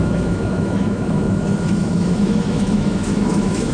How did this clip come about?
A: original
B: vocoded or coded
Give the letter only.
B